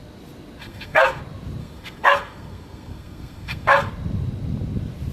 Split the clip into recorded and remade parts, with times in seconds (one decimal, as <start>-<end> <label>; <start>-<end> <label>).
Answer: 0.0-0.6 recorded; 0.6-1.2 remade; 1.2-1.6 recorded; 1.6-3.9 remade; 3.9-5.1 recorded